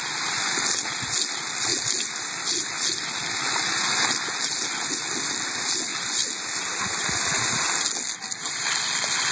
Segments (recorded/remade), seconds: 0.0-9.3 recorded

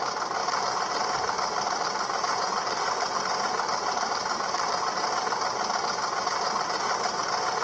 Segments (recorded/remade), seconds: 0.0-0.4 recorded; 0.4-5.0 remade; 5.0-7.6 recorded

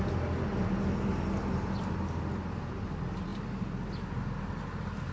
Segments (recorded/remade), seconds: 0.0-5.1 recorded